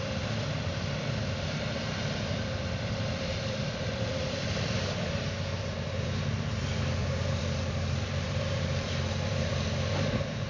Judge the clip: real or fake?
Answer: fake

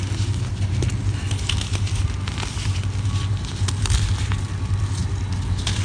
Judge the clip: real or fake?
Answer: real